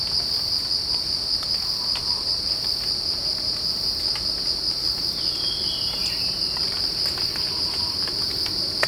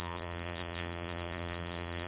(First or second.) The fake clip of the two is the second